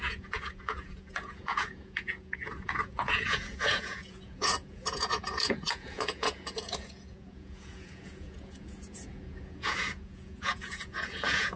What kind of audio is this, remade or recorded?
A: remade